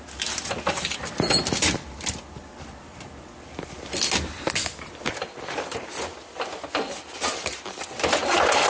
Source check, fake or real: real